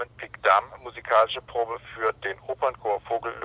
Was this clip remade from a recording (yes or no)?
no